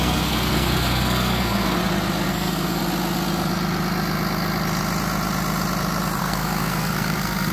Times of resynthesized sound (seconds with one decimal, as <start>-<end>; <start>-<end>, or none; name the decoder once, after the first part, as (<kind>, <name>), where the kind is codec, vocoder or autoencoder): 0.0-1.8 (codec, SNAC); 2.3-2.8; 6.2-7.5